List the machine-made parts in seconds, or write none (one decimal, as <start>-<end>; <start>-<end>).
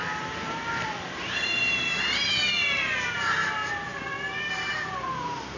none